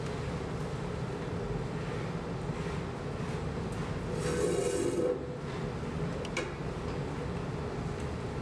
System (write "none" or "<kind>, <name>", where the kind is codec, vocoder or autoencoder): none